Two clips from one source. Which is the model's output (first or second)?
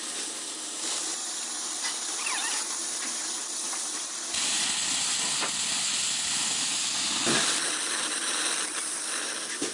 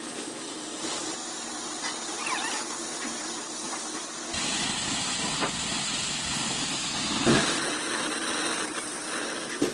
first